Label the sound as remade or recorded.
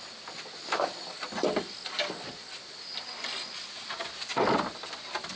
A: recorded